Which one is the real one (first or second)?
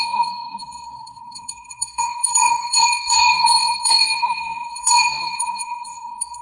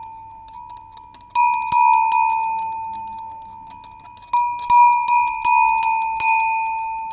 second